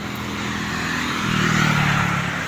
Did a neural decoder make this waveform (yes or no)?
no